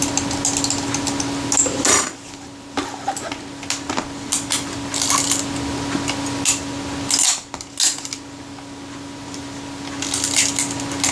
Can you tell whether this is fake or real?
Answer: real